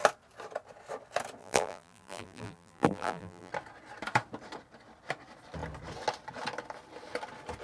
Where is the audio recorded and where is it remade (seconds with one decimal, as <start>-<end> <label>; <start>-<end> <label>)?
0.0-1.4 recorded; 1.4-3.5 remade; 3.5-7.6 recorded